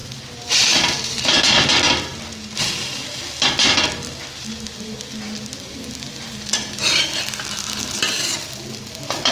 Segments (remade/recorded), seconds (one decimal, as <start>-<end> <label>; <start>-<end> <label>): 0.0-1.4 remade; 1.4-9.3 recorded